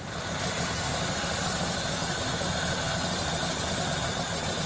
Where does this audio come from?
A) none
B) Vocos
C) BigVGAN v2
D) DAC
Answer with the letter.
A